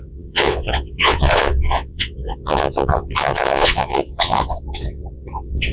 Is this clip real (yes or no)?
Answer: no